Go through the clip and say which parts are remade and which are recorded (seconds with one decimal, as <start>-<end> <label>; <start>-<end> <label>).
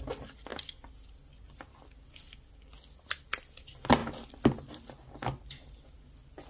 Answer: 0.0-6.5 recorded